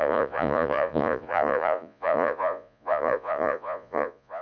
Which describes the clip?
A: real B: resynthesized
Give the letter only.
B